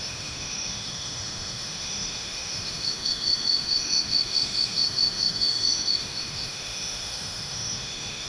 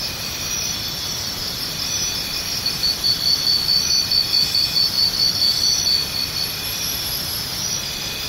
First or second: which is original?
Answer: second